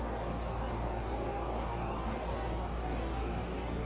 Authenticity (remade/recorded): remade